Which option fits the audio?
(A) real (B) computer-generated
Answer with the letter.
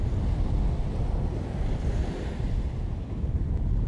A